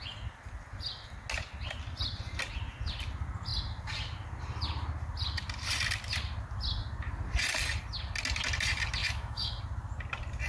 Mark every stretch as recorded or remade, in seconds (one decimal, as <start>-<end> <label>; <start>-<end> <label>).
0.0-9.0 recorded; 9.0-9.6 remade; 9.6-10.5 recorded